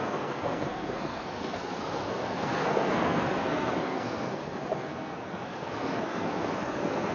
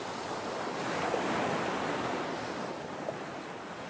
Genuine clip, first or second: second